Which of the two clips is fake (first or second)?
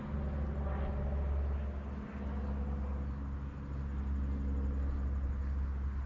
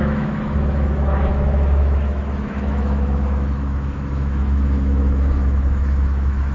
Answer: second